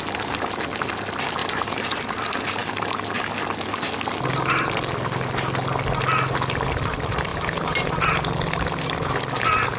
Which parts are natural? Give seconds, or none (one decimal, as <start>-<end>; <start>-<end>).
0.0-1.4; 2.0-7.3; 8.0-9.8